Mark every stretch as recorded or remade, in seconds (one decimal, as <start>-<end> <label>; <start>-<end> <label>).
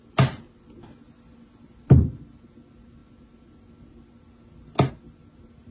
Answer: 0.0-5.7 recorded